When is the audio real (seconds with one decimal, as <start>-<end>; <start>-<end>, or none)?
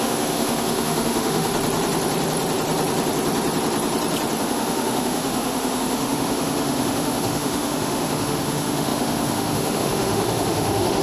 1.5-4.4